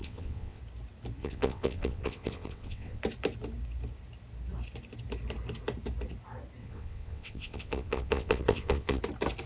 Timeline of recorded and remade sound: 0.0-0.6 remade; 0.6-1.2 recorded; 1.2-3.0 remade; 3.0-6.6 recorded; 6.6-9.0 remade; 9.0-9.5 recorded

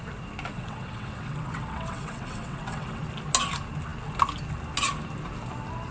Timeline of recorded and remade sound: 0.0-0.5 recorded; 0.5-3.0 remade; 3.0-5.9 recorded

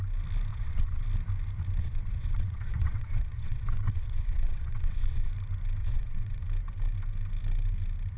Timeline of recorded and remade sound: 0.0-0.5 recorded; 0.5-1.0 remade; 1.0-1.8 recorded; 1.8-5.3 remade; 5.3-5.8 recorded; 5.8-6.4 remade; 6.4-8.2 recorded

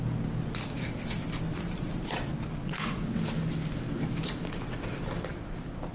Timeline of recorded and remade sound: 0.0-2.6 recorded; 2.6-3.2 remade; 3.2-5.9 recorded